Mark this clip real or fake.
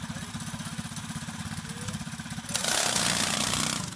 real